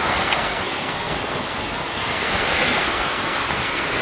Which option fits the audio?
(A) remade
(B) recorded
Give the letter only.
A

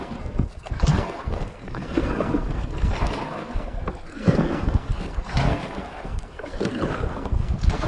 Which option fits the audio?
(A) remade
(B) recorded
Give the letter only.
A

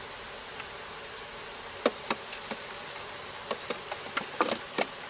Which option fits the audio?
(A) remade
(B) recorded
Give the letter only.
B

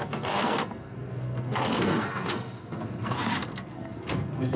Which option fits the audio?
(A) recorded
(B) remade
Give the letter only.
B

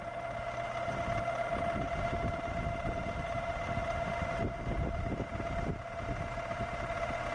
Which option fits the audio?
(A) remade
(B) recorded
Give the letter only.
B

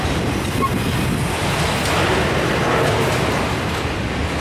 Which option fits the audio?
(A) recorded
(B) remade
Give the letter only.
A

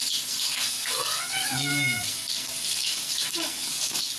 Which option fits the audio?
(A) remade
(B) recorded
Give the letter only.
A